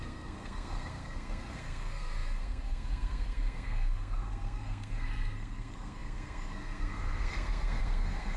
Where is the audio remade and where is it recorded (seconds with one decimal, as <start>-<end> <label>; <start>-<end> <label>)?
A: 0.0-8.4 remade